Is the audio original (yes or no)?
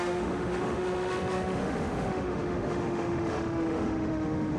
no